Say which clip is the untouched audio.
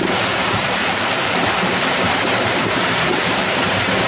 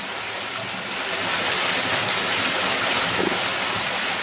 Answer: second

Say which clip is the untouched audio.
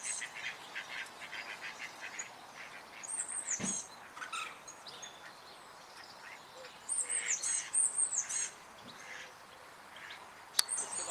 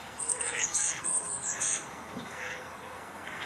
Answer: first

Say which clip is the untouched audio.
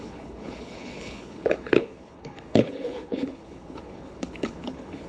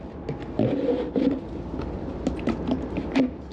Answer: second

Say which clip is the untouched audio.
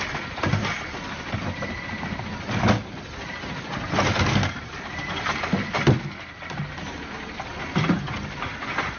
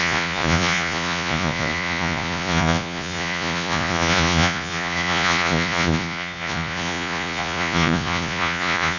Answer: first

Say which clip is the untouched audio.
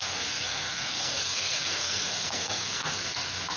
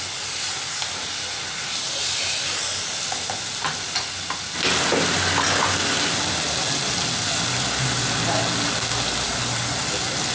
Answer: second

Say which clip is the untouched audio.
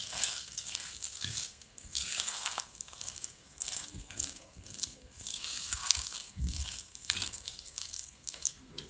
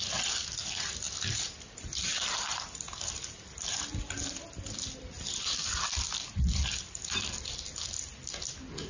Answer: second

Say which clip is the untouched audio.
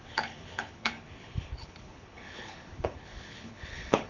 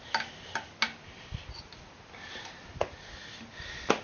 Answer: second